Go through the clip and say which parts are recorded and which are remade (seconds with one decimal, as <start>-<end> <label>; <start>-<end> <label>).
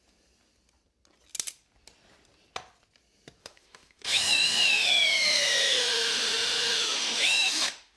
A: 0.0-3.4 recorded; 3.4-8.0 remade